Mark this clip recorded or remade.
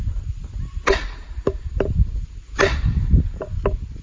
recorded